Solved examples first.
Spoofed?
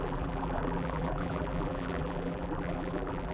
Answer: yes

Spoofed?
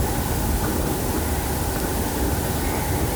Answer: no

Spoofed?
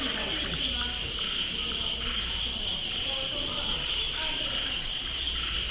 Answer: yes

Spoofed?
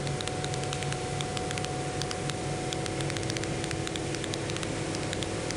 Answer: no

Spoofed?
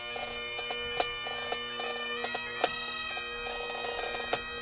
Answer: no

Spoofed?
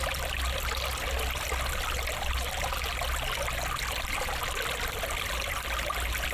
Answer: no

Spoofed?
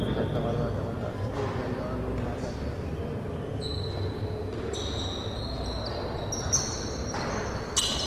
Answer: no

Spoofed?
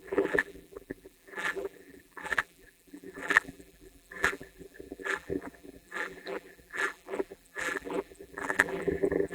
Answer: yes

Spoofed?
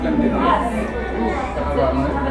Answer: no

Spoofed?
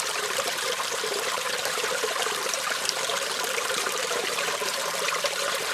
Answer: yes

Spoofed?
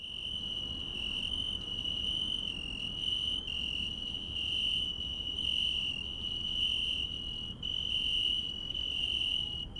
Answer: no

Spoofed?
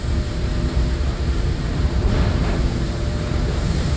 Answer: yes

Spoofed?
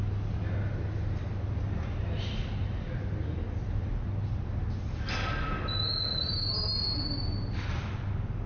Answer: no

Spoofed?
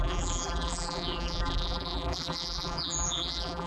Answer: yes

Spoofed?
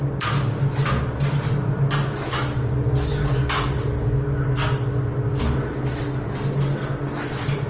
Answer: no